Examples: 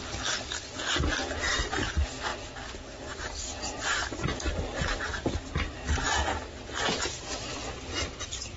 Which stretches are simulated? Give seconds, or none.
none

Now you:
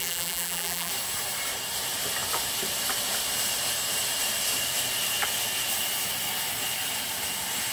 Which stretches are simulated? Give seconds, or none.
0.0-0.9 (vocoder, BigVGAN v2)

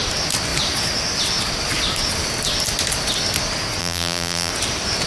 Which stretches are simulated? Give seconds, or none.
3.8-4.5 (vocoder, BigVGAN v2)

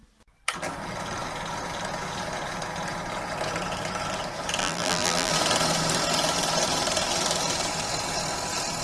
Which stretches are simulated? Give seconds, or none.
4.6-5.3 (vocoder, BigVGAN v2)

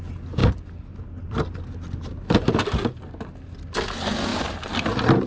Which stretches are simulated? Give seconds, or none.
4.3-5.3 (vocoder, BigVGAN v2)

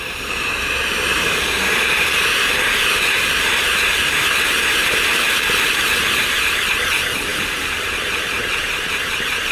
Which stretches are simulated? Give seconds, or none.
0.0-7.3 (vocoder, BigVGAN v2); 8.2-9.5

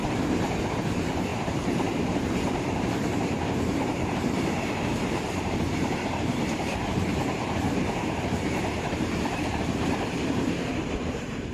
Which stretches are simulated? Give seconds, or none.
0.8-11.5 (vocoder, BigVGAN v2)